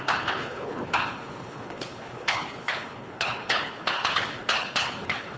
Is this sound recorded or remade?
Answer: remade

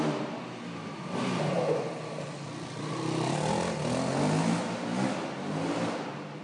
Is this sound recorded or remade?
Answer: recorded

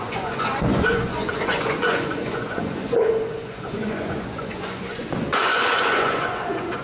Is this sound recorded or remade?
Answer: remade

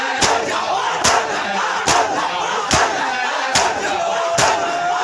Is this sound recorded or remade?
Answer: recorded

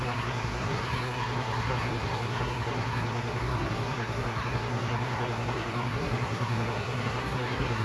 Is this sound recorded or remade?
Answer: remade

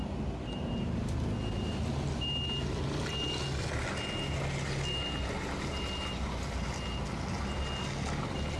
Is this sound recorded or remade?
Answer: recorded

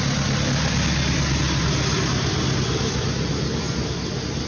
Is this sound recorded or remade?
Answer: recorded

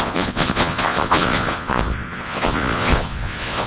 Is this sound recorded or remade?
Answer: remade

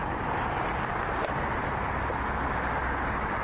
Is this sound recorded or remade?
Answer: recorded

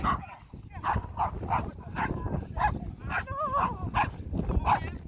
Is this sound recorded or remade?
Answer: recorded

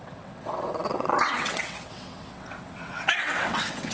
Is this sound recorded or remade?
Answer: remade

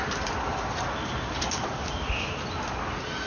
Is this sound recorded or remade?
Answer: recorded